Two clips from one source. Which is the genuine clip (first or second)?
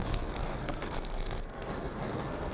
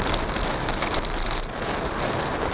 second